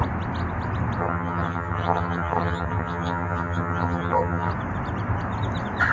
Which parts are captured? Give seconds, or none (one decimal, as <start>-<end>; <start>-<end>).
0.0-1.0; 4.5-5.9